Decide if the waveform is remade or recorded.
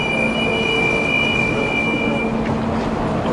recorded